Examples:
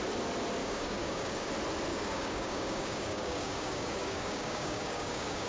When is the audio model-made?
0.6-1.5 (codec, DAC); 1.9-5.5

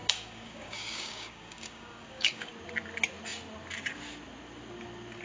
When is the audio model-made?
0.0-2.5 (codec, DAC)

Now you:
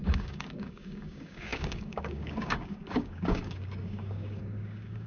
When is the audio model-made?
0.0-5.1 (codec, DAC)

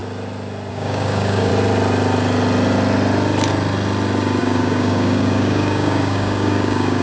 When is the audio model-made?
0.7-1.5 (codec, DAC); 4.4-7.0